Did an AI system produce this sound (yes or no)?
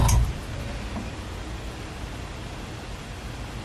no